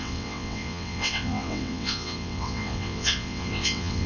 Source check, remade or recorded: remade